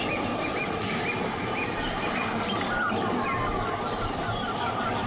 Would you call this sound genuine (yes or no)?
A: yes